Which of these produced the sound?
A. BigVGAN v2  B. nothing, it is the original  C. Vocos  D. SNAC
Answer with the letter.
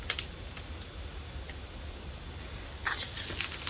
B